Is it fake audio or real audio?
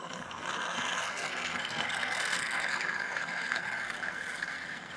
fake